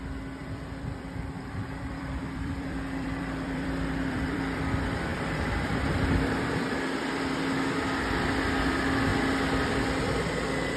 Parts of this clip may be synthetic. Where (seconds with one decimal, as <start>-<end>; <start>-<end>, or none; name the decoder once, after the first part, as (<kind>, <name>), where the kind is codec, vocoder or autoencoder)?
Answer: 0.4-4.6 (vocoder, BigVGAN v2); 5.1-7.3